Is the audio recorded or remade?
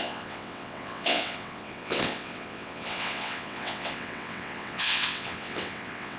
remade